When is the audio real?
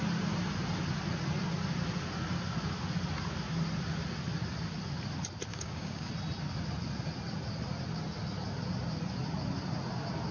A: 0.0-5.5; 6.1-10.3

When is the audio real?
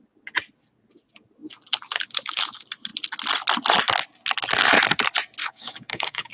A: 0.0-5.4